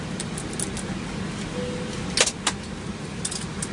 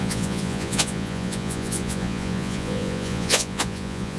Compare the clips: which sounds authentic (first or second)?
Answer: first